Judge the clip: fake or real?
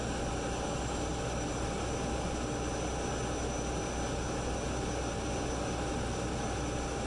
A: real